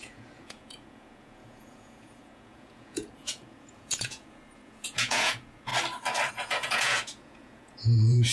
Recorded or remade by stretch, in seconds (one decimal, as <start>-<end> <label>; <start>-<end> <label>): 0.0-5.7 remade; 5.7-6.3 recorded; 6.3-8.3 remade